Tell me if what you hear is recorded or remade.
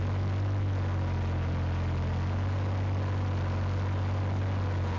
recorded